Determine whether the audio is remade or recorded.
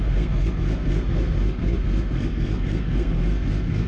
remade